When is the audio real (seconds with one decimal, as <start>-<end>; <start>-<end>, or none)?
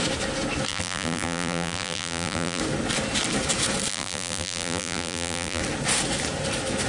0.0-0.7; 2.6-3.9; 5.6-6.9